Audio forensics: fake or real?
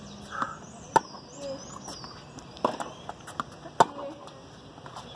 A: real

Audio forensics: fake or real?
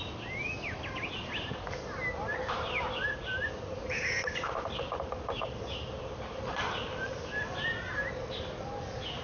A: real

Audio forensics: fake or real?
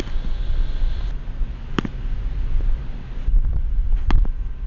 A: real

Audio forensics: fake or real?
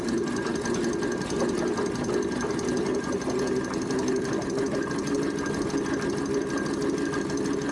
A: real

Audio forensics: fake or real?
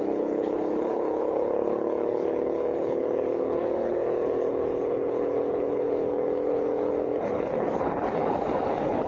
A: fake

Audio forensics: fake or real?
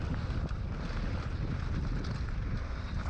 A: real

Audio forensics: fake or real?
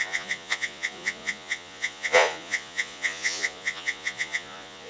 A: fake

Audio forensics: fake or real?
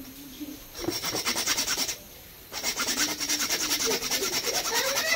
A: fake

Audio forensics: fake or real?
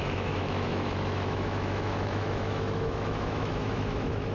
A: fake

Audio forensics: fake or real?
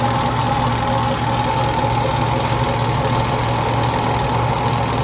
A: real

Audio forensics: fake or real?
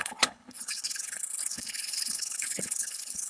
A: fake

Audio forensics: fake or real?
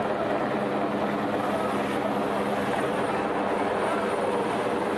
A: real